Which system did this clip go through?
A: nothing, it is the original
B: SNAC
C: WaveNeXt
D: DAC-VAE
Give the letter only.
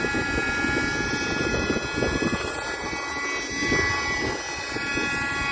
A